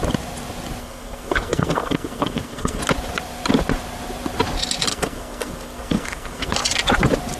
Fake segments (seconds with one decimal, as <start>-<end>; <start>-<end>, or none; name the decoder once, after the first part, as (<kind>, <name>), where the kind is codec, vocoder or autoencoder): 0.8-2.8 (codec, SNAC); 4.9-6.5

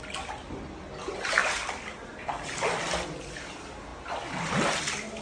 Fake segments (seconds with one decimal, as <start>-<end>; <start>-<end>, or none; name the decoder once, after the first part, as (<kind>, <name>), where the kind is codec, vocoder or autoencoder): none

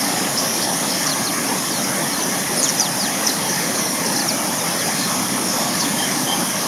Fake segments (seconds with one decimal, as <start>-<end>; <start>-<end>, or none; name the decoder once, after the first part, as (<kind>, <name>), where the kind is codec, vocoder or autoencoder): 0.0-1.1 (codec, DAC); 3.1-4.2; 4.9-6.7

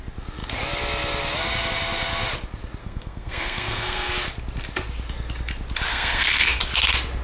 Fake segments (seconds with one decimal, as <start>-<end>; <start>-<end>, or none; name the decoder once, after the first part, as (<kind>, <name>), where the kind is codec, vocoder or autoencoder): 2.8-4.1 (codec, SNAC); 5.9-6.6

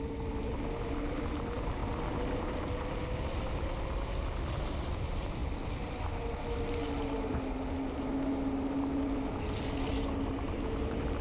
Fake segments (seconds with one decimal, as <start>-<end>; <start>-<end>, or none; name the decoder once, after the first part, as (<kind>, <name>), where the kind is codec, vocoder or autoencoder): none

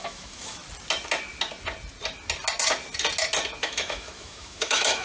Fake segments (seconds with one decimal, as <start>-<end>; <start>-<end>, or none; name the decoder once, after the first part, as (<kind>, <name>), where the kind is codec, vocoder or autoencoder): 0.0-0.6 (autoencoder, DAC-VAE); 3.6-5.0

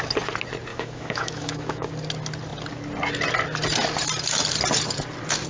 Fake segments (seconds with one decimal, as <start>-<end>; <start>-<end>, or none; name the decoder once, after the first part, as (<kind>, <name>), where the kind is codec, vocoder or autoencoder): 0.7-1.9 (autoencoder, DAC-VAE)